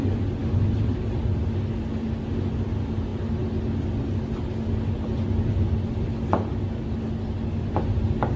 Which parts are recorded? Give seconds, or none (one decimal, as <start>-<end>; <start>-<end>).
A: 0.0-8.4